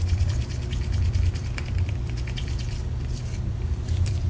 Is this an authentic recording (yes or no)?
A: no